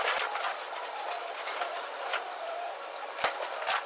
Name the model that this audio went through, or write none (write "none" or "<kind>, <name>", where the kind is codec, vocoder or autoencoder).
none